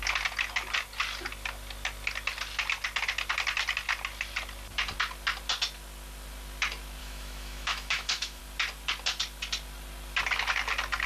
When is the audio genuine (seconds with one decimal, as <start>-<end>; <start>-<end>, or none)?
0.0-7.0; 8.4-11.1